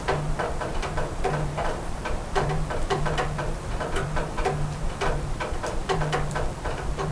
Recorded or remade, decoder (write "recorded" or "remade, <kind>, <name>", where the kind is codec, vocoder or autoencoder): remade, vocoder, BigVGAN v2